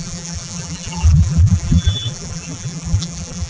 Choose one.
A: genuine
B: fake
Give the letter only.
B